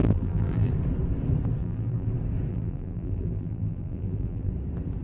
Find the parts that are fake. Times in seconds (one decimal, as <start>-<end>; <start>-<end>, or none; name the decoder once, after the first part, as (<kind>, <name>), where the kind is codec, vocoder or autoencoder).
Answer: 0.0-0.7 (vocoder, BigVGAN v2); 1.6-2.1; 2.5-4.5